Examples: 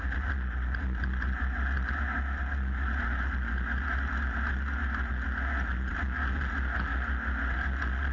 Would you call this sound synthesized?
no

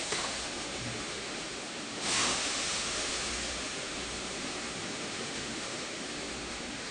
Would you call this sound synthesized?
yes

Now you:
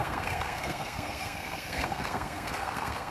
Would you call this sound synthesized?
yes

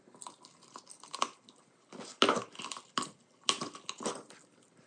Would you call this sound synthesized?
no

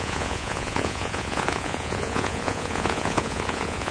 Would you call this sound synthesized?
yes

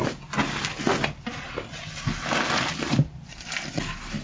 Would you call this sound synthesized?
no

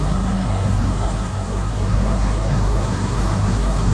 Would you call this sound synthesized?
yes